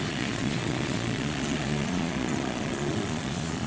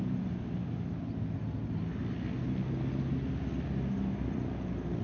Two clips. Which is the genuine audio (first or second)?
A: second